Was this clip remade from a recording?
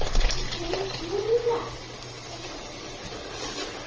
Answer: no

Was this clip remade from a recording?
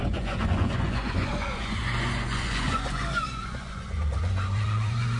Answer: yes